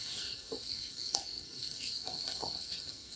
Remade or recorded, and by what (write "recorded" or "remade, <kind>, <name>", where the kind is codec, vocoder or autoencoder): remade, codec, SNAC